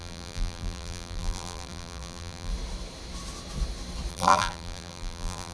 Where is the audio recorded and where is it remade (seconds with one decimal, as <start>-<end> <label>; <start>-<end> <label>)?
0.0-2.5 remade; 2.5-4.1 recorded; 4.1-5.5 remade